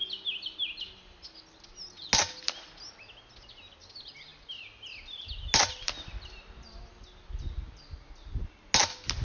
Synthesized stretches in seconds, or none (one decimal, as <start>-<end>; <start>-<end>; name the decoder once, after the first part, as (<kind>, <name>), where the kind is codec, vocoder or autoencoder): none